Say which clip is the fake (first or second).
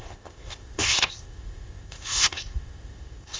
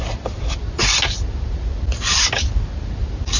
first